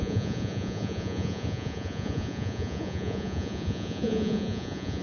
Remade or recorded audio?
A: remade